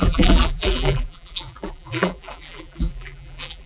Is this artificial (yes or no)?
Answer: yes